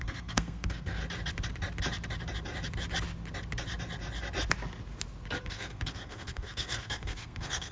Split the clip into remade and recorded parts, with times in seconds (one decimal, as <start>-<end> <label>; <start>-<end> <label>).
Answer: 0.0-1.0 remade; 1.0-5.4 recorded; 5.4-7.7 remade